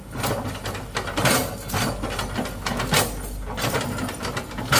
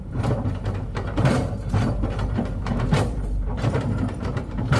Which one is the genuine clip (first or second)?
first